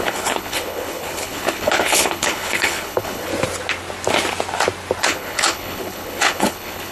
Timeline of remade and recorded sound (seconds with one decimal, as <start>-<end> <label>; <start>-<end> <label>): 0.0-3.3 remade; 3.3-5.0 recorded; 5.0-6.9 remade